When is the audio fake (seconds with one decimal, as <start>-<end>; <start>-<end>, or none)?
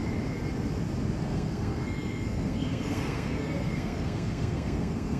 1.2-5.2